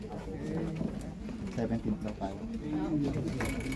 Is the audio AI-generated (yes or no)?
no